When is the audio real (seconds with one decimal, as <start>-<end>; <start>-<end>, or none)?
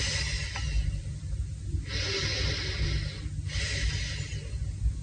0.0-5.0